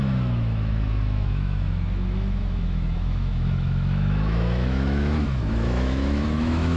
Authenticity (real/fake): fake